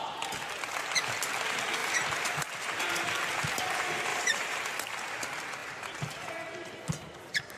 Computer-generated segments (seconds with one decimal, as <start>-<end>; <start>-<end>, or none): 4.1-4.6; 5.6-6.3